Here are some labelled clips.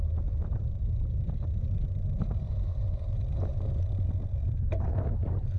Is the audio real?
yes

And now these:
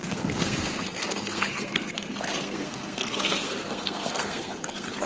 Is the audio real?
no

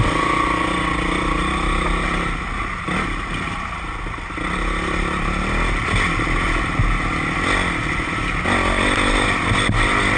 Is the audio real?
yes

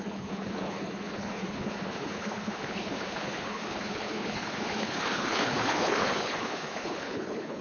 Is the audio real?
no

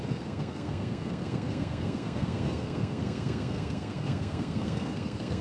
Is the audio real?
no